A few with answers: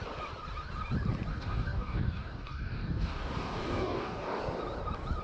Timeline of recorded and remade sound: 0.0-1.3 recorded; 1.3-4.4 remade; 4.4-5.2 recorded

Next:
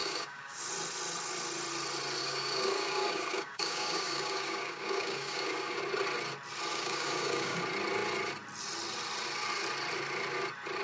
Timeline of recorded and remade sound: 0.0-0.6 remade; 0.6-2.2 recorded; 2.2-5.8 remade; 5.8-6.7 recorded; 6.7-7.6 remade; 7.6-10.8 recorded

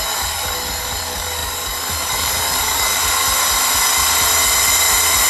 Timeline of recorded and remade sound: 0.0-3.0 remade; 3.0-5.3 recorded

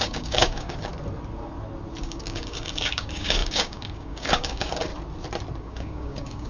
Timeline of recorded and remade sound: 0.0-0.9 remade; 0.9-2.0 recorded; 2.0-4.9 remade; 4.9-5.6 recorded; 5.6-6.5 remade

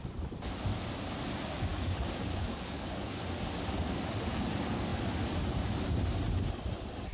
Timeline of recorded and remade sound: 0.0-1.7 recorded; 1.7-3.2 remade; 3.2-7.1 recorded

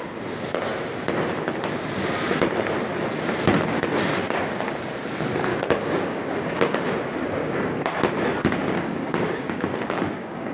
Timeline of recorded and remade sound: 0.0-5.5 recorded; 5.5-6.8 remade; 6.8-7.4 recorded; 7.4-7.9 remade; 7.9-8.6 recorded; 8.6-10.5 remade

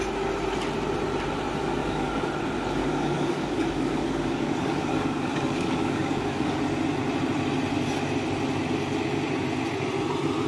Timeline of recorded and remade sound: 0.0-1.8 recorded; 1.8-2.3 remade; 2.3-2.8 recorded; 2.8-6.6 remade; 6.6-10.5 recorded